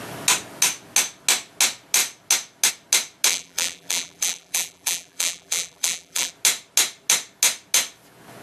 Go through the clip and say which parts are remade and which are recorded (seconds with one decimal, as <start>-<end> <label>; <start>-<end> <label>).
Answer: 0.0-3.3 recorded; 3.3-6.3 remade; 6.3-8.4 recorded